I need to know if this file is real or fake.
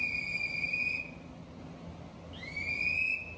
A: real